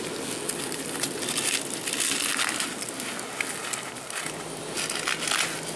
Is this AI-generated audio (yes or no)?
no